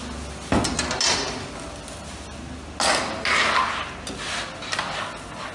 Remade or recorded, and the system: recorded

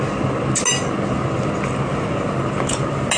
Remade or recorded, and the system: recorded